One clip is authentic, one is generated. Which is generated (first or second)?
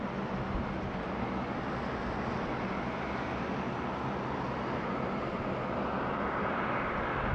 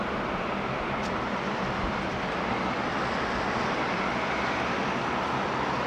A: second